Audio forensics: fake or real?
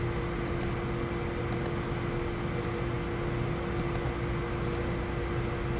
real